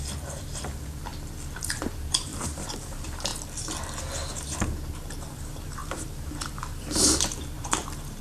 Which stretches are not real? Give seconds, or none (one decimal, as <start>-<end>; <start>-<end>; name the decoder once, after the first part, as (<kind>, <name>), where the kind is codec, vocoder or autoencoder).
0.0-1.1 (vocoder, BigVGAN v2); 1.6-3.3; 4.3-8.2

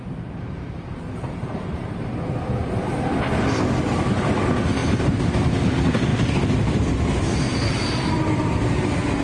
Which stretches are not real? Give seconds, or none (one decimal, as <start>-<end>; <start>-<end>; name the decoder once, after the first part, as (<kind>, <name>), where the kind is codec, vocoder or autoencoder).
1.5-3.1 (vocoder, BigVGAN v2); 4.8-5.4

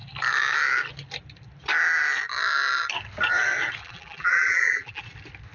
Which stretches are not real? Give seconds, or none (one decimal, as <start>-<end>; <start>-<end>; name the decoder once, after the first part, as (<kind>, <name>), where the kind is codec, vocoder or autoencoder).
3.8-5.0 (vocoder, BigVGAN v2)

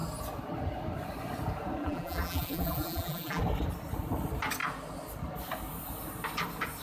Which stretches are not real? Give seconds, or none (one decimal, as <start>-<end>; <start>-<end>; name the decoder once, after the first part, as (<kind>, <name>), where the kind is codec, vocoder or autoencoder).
1.8-3.4 (vocoder, BigVGAN v2)

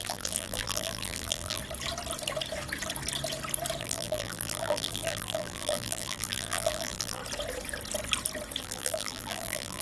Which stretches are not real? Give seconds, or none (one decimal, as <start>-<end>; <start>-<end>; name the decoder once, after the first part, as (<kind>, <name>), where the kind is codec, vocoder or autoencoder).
0.0-1.6 (vocoder, BigVGAN v2); 3.8-7.2; 8.6-9.8